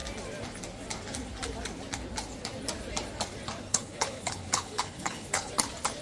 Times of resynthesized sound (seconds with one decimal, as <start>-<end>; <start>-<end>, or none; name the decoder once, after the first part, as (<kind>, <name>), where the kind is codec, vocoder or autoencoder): 3.7-5.5 (codec, HILCodec)